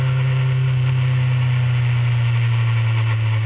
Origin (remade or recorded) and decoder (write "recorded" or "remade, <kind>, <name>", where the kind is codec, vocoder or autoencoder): recorded